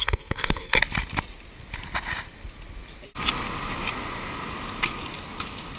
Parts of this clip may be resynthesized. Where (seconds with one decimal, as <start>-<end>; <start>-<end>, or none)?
0.0-0.8